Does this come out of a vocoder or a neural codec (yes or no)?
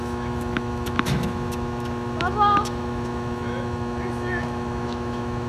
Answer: yes